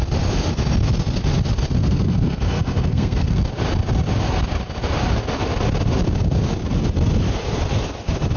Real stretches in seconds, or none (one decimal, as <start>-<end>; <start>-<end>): 0.0-1.8; 3.4-8.4